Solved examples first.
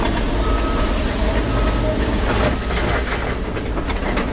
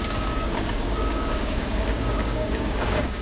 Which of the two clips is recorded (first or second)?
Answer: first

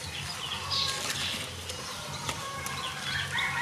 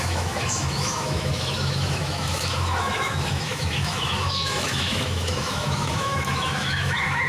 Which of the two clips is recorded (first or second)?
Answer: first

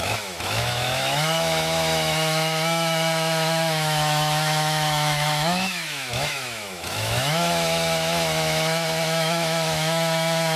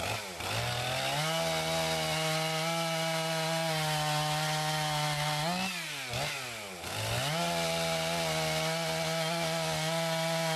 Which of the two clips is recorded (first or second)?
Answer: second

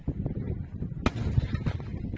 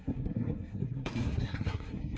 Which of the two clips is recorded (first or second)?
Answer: first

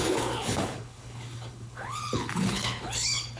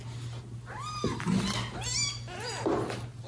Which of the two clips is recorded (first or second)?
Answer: second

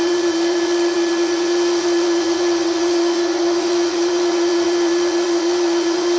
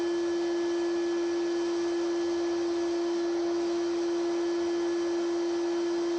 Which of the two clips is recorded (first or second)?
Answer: second